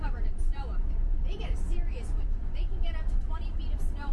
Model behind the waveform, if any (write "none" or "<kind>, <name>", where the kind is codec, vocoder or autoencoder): vocoder, BigVGAN v2